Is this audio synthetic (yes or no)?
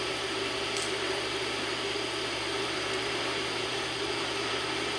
yes